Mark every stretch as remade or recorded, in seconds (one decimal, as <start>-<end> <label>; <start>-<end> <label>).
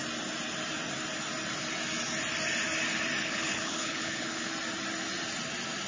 0.0-3.2 recorded; 3.2-4.5 remade; 4.5-5.9 recorded